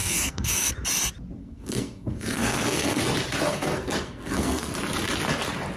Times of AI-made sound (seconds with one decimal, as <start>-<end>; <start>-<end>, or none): 0.0-0.7; 1.4-3.0; 3.5-4.7